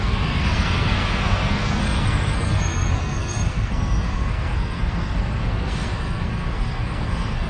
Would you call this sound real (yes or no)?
no